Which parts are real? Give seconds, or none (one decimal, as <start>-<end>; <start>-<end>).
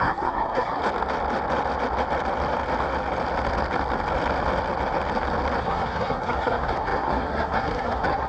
0.8-5.6